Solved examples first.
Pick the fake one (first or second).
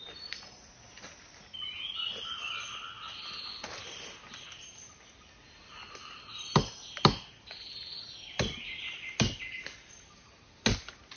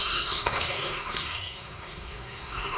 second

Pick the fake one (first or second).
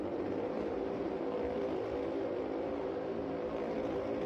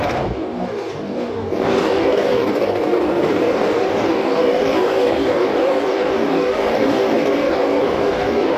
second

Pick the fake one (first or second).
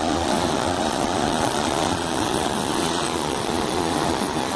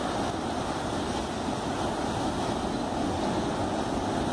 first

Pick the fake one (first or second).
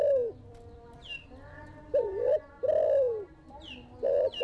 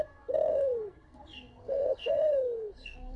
second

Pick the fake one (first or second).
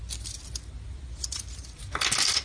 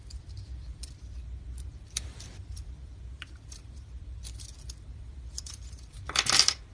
second